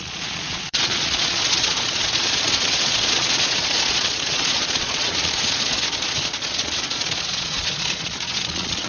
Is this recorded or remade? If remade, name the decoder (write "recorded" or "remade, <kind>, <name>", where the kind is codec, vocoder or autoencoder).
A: remade, vocoder, Vocos